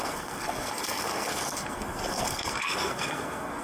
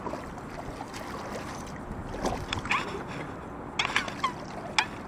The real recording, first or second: second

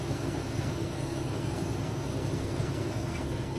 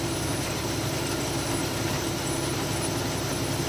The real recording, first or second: second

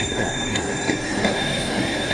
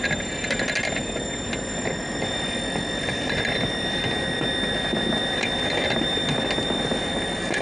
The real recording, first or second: second